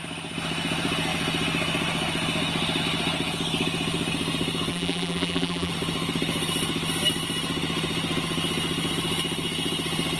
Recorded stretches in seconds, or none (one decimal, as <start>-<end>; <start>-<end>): 0.0-4.7; 5.7-10.2

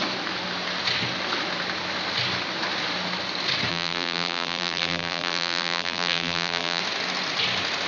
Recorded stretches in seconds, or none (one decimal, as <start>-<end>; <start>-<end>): 0.0-3.7; 6.8-7.9

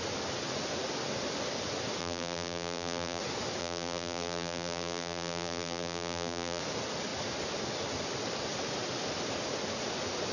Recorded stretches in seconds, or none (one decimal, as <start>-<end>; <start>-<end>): 0.0-2.0; 3.2-3.6; 6.6-10.3

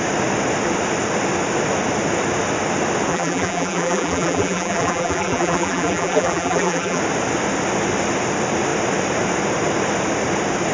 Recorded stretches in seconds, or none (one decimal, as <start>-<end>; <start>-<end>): 0.0-3.1; 7.0-10.7

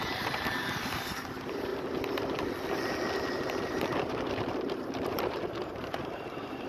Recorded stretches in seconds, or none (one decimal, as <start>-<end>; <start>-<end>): 1.7-3.3